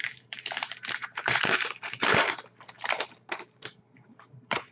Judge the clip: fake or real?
fake